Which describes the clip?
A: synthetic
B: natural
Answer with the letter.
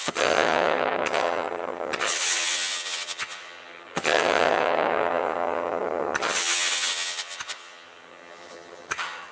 A